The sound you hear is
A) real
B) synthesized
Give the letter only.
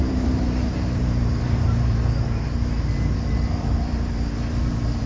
B